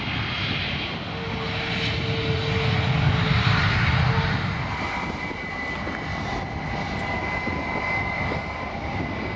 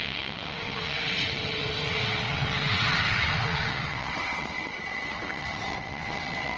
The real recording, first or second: first